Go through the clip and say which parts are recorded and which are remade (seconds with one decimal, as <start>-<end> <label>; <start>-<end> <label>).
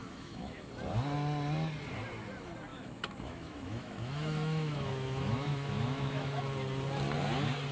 0.0-0.7 remade; 0.7-2.7 recorded; 2.7-6.4 remade; 6.4-7.7 recorded